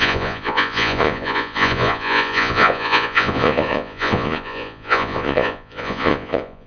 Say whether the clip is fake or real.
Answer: fake